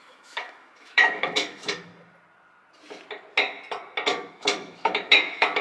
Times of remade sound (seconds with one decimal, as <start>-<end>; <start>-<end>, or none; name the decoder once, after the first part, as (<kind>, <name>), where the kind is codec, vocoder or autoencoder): 0.0-1.9 (autoencoder, DAC-VAE); 4.3-5.6